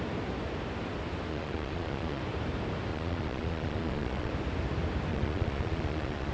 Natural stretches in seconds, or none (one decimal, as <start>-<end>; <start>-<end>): 0.0-1.3; 2.2-2.9; 4.3-5.1